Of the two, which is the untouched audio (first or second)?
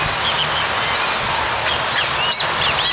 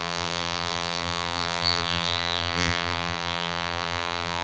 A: first